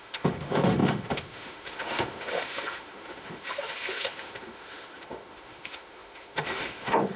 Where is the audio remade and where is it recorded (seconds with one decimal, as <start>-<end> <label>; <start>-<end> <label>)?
0.0-7.2 remade